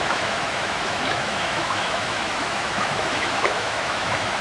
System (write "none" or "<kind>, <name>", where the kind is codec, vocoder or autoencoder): autoencoder, DAC-VAE